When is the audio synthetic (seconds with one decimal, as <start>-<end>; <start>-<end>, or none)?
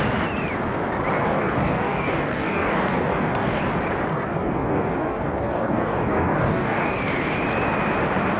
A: 1.2-3.6; 4.1-7.0